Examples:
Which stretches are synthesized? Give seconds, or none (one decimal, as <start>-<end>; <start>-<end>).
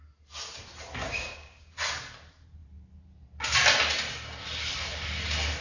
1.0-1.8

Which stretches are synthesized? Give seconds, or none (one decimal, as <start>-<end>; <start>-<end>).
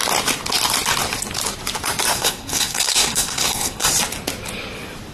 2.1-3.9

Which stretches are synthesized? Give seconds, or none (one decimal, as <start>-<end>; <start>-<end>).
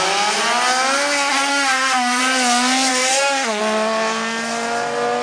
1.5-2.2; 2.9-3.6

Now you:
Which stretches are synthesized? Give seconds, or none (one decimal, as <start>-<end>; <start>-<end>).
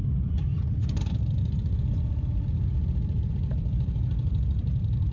0.0-5.1